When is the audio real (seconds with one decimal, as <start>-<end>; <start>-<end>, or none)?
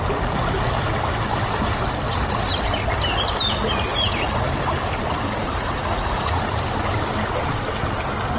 0.0-3.9; 4.5-5.4; 6.4-8.4